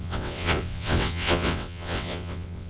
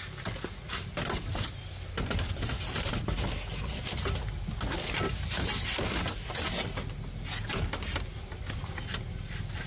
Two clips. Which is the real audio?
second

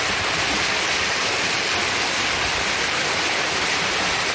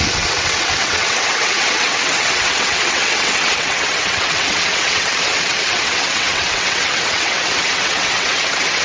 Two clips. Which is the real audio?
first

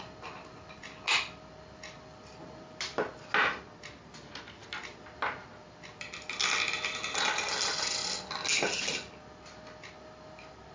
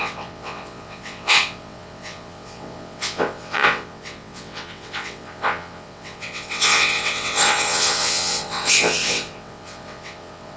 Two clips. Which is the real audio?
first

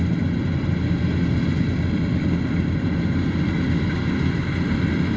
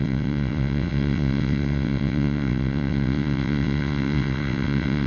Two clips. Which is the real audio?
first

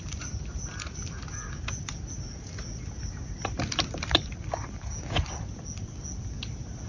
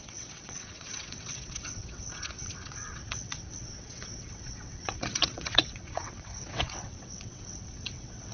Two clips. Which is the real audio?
first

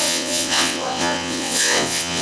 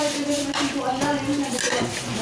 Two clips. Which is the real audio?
second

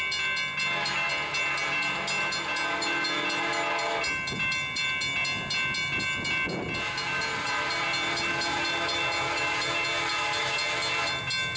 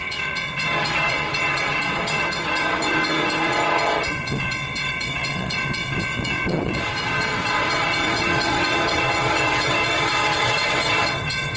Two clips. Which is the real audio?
first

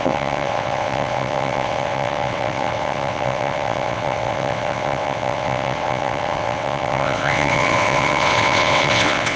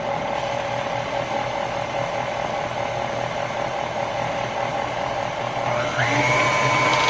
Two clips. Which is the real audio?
second